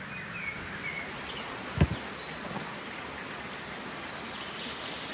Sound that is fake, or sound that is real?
real